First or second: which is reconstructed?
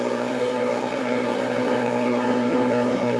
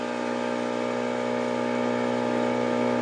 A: first